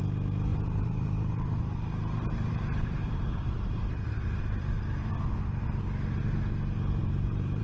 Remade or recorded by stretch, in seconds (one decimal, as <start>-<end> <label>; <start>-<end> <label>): 0.0-0.5 recorded; 0.5-5.1 remade; 5.1-7.0 recorded; 7.0-7.6 remade